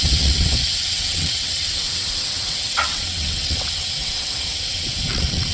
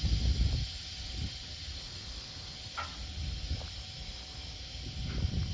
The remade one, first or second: first